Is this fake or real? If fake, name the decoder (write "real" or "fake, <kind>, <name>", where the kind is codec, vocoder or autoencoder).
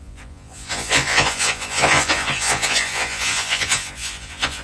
fake, vocoder, Vocos